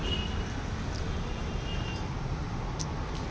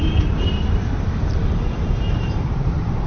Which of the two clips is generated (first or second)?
second